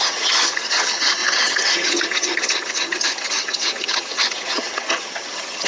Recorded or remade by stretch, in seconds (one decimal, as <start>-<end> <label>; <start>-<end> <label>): 0.0-5.7 remade

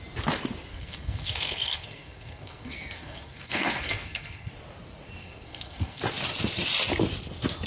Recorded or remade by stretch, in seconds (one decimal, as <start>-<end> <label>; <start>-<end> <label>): 0.0-0.7 recorded; 0.7-4.5 remade; 4.5-5.2 recorded; 5.2-6.0 remade; 6.0-7.7 recorded

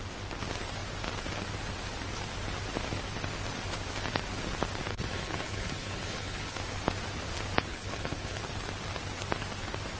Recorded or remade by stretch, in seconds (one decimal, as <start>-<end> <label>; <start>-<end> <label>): 0.0-4.9 recorded; 4.9-6.6 remade; 6.6-7.7 recorded; 7.7-8.4 remade; 8.4-10.0 recorded